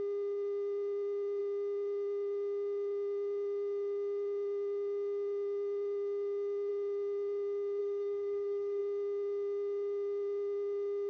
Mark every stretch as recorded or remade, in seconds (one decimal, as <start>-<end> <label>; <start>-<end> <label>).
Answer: 0.0-7.8 recorded; 7.8-8.8 remade; 8.8-11.1 recorded